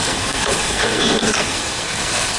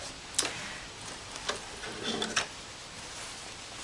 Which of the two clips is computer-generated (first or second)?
first